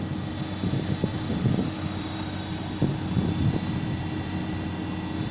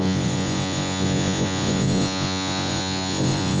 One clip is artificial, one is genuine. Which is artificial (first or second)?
second